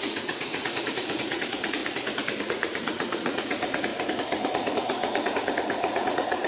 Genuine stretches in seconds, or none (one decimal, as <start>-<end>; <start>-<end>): 1.8-2.4; 3.9-4.5

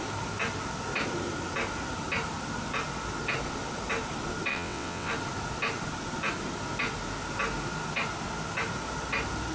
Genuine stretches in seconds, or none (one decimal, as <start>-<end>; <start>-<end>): 0.0-4.5; 5.1-9.5

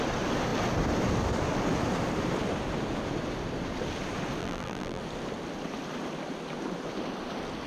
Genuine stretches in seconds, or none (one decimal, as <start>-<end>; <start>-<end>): 0.0-4.4; 5.0-7.7

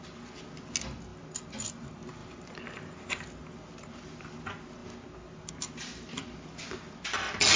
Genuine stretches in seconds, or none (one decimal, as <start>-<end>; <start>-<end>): 0.0-7.6

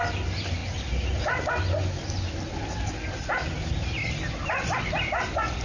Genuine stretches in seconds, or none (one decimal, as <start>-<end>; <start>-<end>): 0.0-5.6